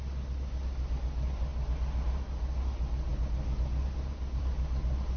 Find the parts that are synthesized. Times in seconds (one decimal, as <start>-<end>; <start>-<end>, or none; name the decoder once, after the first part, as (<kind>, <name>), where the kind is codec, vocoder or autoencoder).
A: none